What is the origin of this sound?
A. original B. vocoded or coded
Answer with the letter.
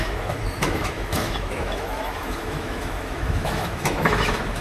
B